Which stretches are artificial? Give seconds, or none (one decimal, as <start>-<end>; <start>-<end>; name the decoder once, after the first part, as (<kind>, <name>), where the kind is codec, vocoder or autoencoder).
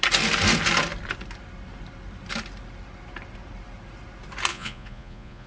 4.5-5.5 (vocoder, Vocos)